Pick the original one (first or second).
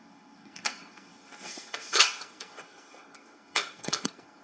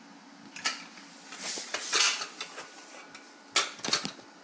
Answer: second